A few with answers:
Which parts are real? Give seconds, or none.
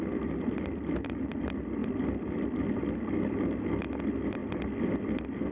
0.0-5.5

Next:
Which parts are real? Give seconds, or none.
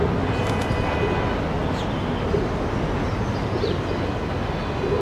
0.0-5.0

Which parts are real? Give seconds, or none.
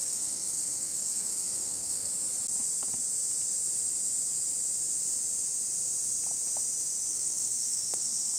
2.1-7.1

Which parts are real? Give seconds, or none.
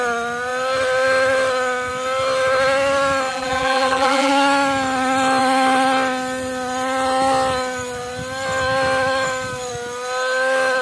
0.0-3.3; 4.3-10.8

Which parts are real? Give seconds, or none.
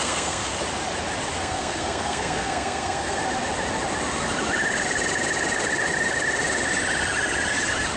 0.5-1.4; 3.2-8.0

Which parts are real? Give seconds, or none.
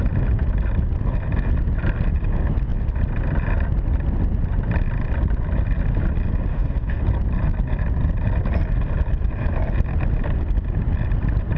0.0-6.5; 7.0-11.6